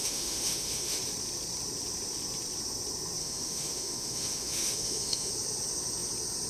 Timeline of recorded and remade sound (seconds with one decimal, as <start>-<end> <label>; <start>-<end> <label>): 0.0-1.0 remade; 1.0-3.2 recorded; 3.2-5.3 remade; 5.3-6.5 recorded

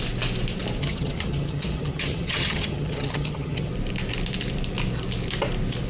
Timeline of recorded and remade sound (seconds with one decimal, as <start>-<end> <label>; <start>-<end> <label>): 0.0-0.8 recorded; 0.8-3.7 remade; 3.7-5.9 recorded

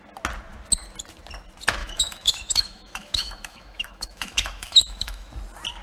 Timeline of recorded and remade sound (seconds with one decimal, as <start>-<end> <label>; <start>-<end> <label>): 0.0-1.8 recorded; 1.8-5.3 remade; 5.3-5.8 recorded

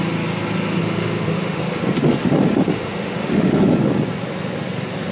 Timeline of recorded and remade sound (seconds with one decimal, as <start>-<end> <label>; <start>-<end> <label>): 0.0-0.8 recorded; 0.8-3.9 remade; 3.9-5.1 recorded

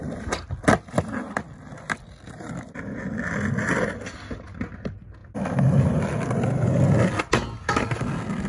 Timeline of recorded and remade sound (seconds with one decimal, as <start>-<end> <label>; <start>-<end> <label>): 0.0-8.5 recorded

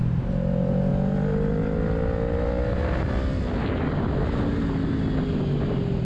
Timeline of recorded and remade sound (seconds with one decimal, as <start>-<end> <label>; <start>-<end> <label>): 0.0-6.0 recorded

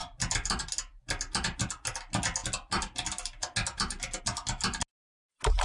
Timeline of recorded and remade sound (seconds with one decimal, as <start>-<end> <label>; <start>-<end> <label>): 0.0-5.6 recorded

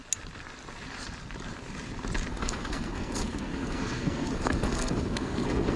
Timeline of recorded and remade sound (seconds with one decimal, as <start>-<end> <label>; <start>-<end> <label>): 0.0-2.3 recorded; 2.3-5.8 remade